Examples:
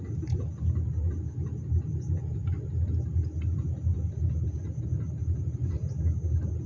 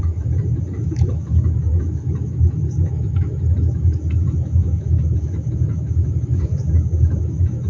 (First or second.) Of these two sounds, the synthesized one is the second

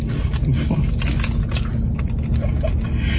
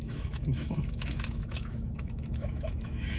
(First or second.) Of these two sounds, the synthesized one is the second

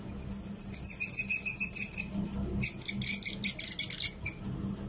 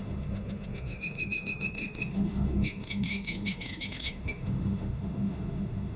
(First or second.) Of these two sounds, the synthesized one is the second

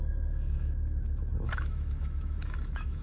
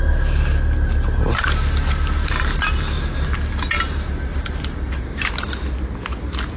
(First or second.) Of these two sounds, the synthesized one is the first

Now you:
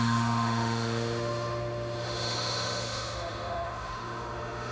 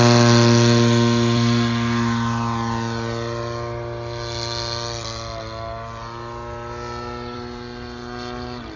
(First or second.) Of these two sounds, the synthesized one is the first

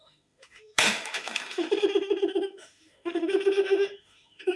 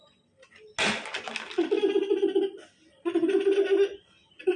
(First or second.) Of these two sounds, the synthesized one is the first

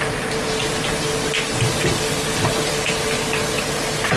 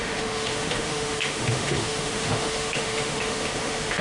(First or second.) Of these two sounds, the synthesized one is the second